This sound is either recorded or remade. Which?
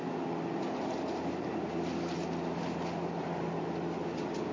recorded